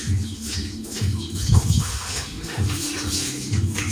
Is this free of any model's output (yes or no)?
no